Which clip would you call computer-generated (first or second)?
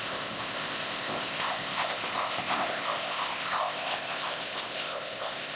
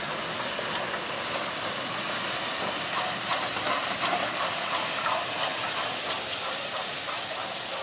first